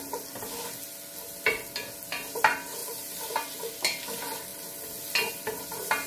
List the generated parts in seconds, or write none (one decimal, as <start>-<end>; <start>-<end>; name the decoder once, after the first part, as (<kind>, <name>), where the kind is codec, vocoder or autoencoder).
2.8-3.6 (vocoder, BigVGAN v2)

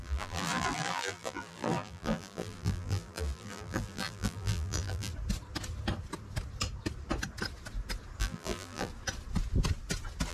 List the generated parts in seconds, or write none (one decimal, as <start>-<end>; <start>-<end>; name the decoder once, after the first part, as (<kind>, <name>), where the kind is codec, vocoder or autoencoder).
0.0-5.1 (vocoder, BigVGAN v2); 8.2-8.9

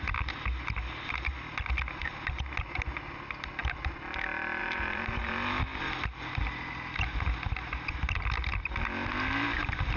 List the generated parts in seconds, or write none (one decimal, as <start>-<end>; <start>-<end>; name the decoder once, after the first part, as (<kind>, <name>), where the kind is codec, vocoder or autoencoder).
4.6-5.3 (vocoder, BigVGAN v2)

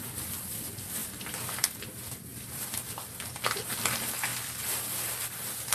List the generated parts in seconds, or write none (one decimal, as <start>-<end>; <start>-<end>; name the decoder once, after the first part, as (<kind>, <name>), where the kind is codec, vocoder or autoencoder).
1.0-1.5 (vocoder, BigVGAN v2); 2.3-3.7

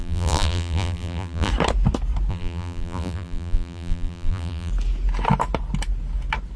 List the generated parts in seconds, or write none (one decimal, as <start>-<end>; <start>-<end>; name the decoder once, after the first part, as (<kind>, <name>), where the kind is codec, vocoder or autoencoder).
0.0-1.5 (vocoder, BigVGAN v2); 2.3-4.7